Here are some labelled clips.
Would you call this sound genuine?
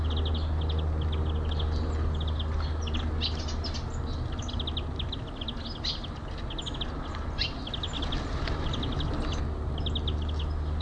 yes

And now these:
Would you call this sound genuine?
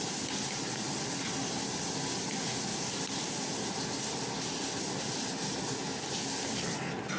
yes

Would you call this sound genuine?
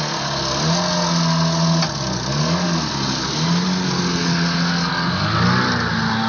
yes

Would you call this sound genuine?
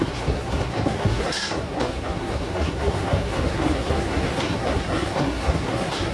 no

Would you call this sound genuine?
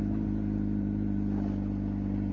yes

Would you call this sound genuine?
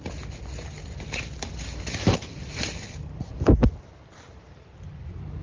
yes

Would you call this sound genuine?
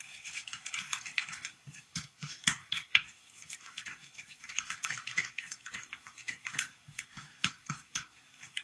no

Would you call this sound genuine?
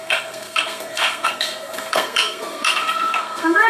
no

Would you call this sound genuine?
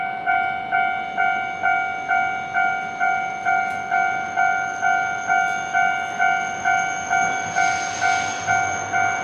yes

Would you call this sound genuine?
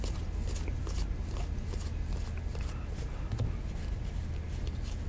yes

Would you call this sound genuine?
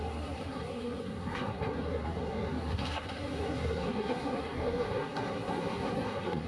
no